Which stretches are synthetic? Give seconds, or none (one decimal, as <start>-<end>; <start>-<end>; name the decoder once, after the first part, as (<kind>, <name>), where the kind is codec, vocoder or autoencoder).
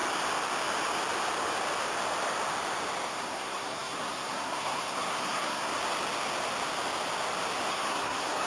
3.1-5.7 (codec, SNAC); 7.7-8.5